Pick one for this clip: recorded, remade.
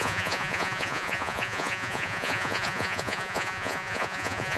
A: remade